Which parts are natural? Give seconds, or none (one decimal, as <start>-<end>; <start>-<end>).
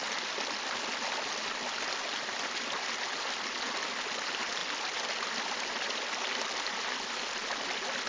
0.0-8.1